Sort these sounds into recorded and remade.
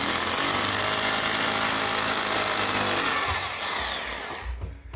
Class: recorded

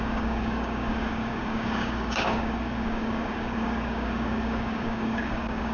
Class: remade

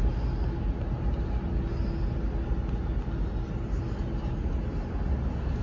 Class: recorded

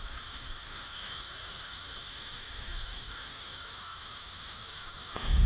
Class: remade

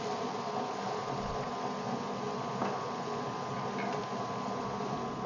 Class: recorded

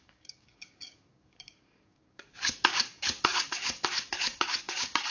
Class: remade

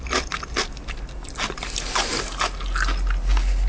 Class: recorded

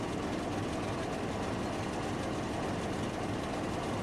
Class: recorded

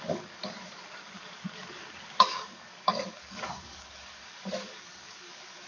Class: remade